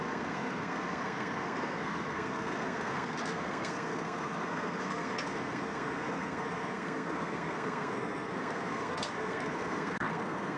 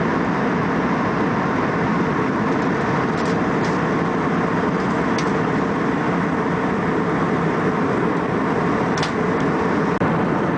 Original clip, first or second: second